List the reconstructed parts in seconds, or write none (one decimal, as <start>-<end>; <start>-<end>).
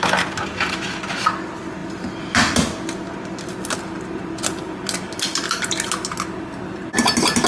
none